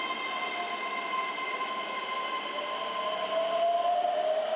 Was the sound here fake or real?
real